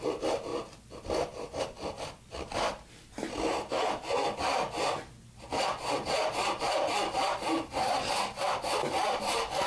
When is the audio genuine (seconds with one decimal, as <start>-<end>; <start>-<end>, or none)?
0.5-1.6; 2.3-6.6